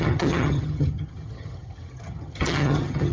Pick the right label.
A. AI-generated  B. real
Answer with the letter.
A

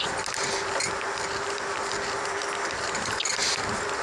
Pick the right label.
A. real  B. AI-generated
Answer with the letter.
A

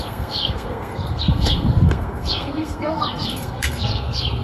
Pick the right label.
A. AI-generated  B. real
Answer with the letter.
A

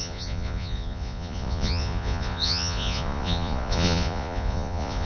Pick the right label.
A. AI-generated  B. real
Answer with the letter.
A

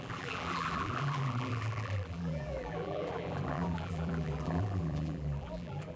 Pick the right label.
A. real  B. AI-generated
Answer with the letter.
B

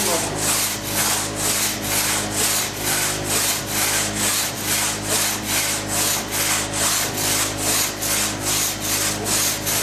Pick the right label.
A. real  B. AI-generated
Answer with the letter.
A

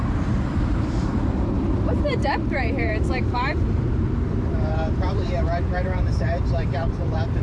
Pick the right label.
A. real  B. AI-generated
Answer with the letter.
B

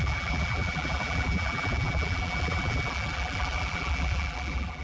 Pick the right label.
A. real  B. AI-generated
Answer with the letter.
B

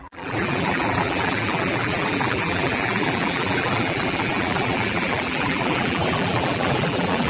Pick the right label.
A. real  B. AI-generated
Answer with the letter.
B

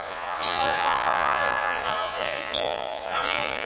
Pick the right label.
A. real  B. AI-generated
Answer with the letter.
B